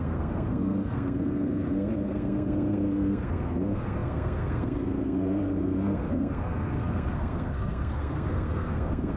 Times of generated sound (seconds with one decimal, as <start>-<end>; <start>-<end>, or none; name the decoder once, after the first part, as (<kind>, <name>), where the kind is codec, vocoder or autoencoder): 0.0-9.2 (codec, SNAC)